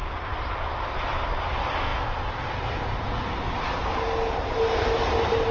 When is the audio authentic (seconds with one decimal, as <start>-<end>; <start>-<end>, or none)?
0.0-5.5